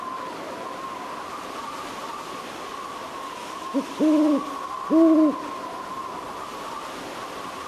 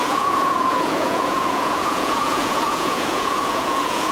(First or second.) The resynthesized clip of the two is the second